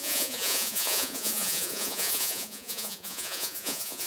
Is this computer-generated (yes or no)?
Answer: yes